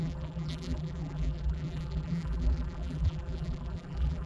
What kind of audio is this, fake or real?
fake